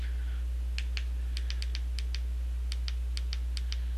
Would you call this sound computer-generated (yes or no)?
no